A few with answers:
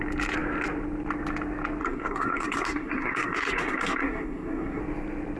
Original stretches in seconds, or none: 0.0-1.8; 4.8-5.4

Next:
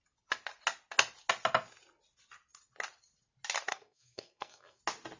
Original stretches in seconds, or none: 0.0-3.7; 4.8-5.2

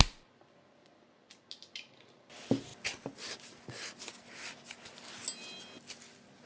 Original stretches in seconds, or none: 0.0-6.5

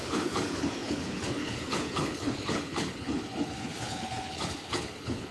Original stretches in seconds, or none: none

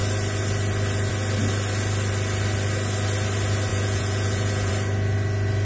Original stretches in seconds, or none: 0.0-3.7; 4.7-5.7